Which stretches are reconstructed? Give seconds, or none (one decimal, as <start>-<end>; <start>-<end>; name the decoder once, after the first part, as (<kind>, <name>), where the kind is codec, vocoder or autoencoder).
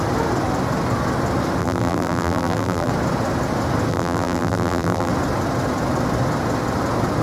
1.6-2.9 (vocoder, BigVGAN v2); 3.9-5.1